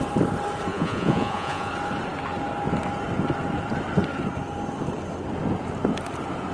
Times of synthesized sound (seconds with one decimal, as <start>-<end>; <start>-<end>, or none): 0.7-1.7